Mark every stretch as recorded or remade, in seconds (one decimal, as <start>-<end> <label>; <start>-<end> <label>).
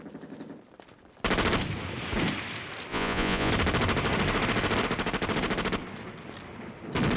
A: 0.0-2.9 recorded; 2.9-3.5 remade; 3.5-7.2 recorded